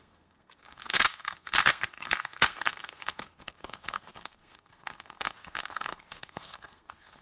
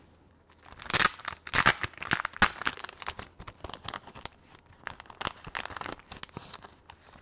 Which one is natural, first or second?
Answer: second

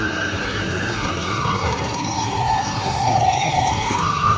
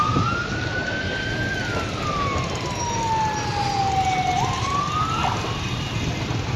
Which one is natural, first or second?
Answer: second